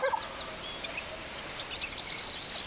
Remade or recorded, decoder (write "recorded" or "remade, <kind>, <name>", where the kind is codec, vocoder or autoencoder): recorded